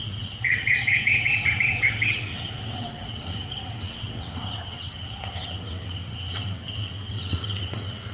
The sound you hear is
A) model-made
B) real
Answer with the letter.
A